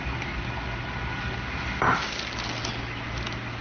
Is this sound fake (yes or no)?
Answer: no